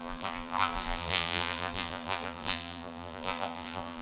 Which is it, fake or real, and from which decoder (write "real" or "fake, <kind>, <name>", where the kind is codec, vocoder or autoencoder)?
fake, vocoder, BigVGAN v2